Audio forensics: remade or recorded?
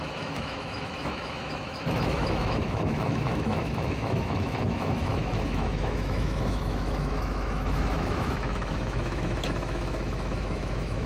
remade